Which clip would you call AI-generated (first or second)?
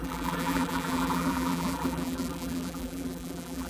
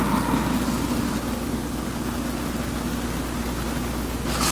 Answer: first